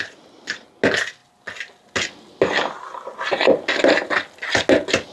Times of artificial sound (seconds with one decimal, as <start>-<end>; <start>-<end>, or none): none